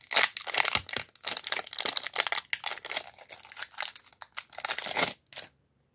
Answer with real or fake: real